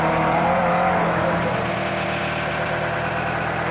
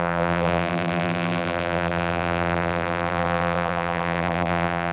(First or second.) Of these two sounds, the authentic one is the first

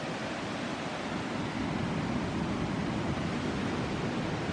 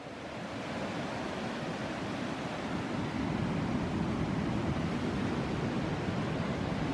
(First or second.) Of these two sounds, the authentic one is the first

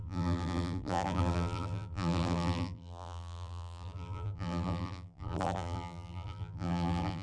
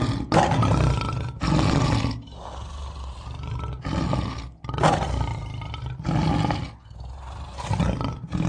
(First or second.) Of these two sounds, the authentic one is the second